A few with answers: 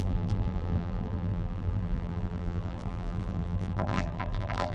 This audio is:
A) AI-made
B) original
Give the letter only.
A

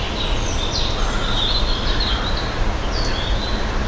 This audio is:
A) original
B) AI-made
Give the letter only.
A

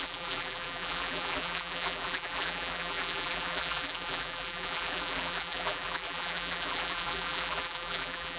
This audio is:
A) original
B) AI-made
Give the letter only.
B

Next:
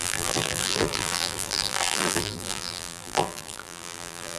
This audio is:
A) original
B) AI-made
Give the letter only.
B